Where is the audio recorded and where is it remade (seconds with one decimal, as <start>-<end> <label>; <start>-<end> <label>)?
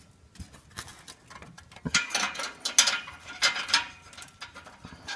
0.0-5.2 recorded